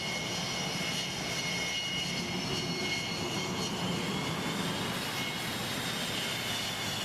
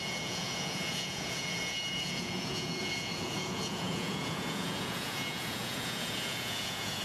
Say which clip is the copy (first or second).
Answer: second